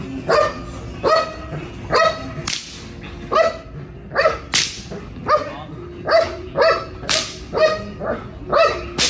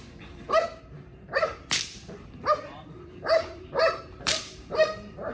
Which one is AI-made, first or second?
second